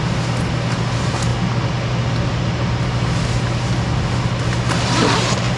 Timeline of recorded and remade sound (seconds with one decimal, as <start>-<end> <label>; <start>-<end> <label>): 0.0-5.6 recorded